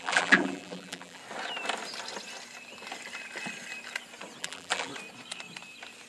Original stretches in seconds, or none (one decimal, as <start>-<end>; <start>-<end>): 1.2-4.4; 4.9-6.1